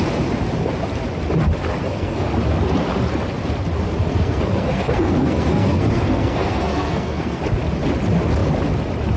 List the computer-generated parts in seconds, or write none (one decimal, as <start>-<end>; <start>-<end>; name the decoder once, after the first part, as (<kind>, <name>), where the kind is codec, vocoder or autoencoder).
1.8-2.3 (codec, SNAC); 4.0-7.4